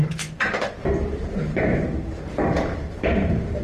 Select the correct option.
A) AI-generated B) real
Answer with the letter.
A